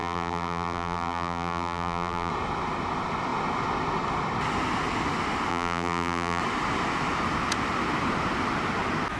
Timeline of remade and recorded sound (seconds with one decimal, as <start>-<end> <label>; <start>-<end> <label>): 0.0-2.3 remade; 2.3-5.5 recorded; 5.5-6.4 remade; 6.4-9.2 recorded